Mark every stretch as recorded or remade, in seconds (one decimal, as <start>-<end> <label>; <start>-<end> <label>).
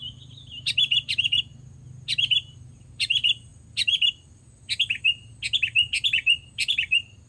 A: 0.0-1.5 remade; 1.5-2.2 recorded; 2.2-3.5 remade; 3.5-6.4 recorded; 6.4-7.3 remade